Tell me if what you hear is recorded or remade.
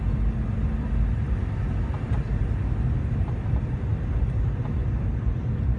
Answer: recorded